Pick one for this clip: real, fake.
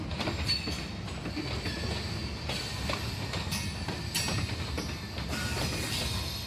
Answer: real